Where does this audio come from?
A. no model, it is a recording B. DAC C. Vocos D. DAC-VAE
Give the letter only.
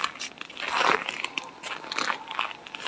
A